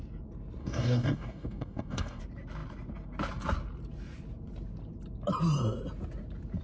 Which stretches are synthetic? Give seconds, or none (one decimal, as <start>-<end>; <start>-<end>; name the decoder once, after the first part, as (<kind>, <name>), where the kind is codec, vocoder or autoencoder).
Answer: 0.6-2.2 (codec, DAC)